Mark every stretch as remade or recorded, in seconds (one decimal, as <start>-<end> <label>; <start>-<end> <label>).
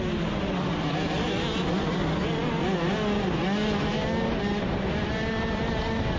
0.0-6.2 recorded